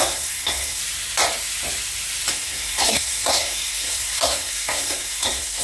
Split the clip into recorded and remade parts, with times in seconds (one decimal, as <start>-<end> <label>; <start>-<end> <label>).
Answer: 0.0-0.8 remade; 0.8-2.3 recorded; 2.3-5.6 remade